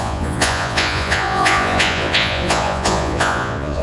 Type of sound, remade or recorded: remade